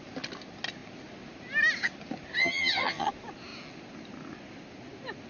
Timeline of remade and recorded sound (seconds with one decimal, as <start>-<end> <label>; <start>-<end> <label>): 0.0-2.4 recorded; 2.4-3.1 remade; 3.1-5.3 recorded